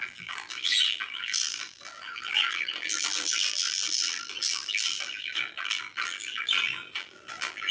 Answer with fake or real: fake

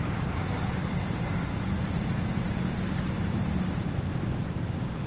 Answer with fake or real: fake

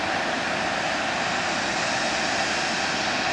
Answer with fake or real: real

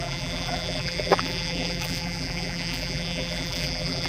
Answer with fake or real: fake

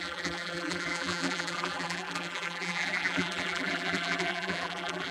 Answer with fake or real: fake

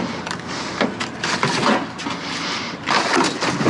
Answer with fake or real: real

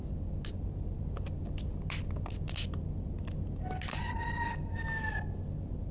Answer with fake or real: real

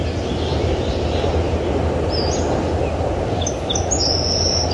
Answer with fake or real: real